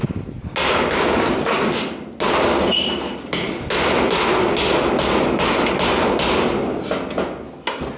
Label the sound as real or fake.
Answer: real